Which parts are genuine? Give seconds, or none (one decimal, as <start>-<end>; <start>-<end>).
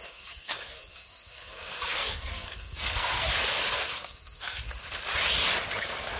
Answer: 4.6-5.8